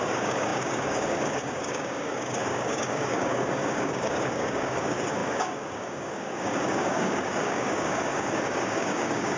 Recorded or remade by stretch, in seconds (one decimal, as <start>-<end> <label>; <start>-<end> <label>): 0.0-9.4 remade